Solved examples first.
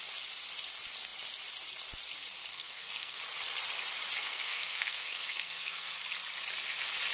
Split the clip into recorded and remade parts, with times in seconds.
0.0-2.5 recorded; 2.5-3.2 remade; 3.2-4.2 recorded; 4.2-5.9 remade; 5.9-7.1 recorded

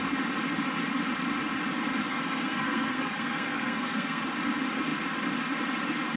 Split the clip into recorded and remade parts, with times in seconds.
0.0-2.1 recorded; 2.1-4.2 remade; 4.2-6.2 recorded

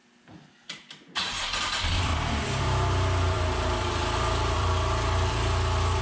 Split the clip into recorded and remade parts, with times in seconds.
0.0-1.6 recorded; 1.6-2.1 remade; 2.1-2.6 recorded; 2.6-6.0 remade

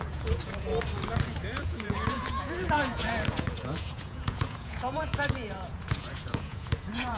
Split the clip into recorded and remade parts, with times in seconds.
0.0-0.7 remade; 0.7-1.2 recorded; 1.2-7.2 remade

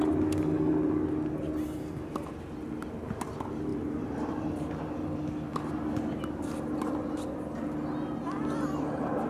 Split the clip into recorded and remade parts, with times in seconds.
0.0-3.7 recorded; 3.7-4.8 remade; 4.8-9.3 recorded

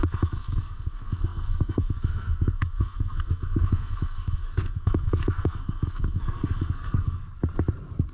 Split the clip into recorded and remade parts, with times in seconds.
0.0-7.2 remade; 7.2-8.1 recorded

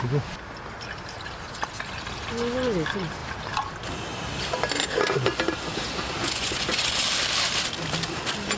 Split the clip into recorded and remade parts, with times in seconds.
0.0-6.2 recorded; 6.2-7.0 remade; 7.0-8.6 recorded